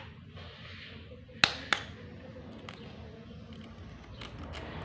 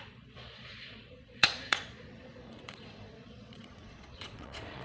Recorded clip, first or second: first